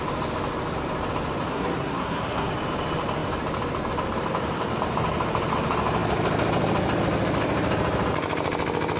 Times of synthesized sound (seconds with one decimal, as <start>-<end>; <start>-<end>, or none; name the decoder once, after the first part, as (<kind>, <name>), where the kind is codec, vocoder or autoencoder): 1.5-2.5 (codec, SNAC)